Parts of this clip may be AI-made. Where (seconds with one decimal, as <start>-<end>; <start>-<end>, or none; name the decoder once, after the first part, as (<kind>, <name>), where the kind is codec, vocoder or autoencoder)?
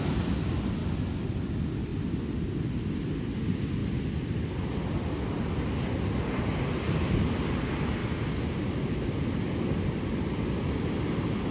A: 3.8-4.5 (vocoder, BigVGAN v2); 8.0-10.9